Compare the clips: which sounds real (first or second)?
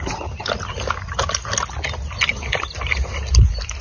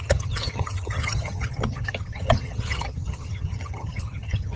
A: first